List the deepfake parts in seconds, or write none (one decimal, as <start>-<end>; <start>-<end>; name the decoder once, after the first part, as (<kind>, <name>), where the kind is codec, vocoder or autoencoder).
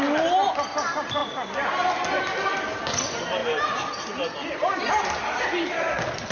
none